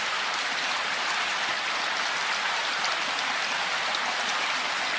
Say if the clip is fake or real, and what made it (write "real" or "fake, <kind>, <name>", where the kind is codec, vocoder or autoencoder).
real